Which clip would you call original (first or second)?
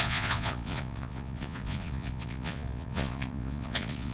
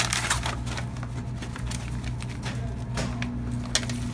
second